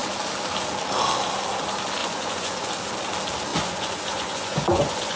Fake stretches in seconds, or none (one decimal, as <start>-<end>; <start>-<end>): 2.0-2.7; 3.5-5.2